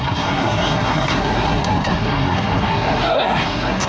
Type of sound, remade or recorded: remade